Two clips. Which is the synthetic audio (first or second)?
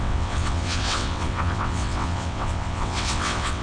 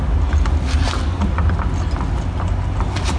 first